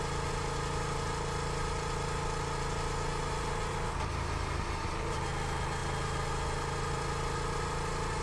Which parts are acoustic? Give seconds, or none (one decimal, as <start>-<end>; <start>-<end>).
0.0-8.2